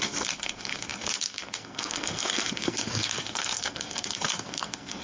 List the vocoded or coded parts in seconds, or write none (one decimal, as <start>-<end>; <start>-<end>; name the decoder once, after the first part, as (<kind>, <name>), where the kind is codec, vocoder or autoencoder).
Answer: 0.0-5.0 (codec, SNAC)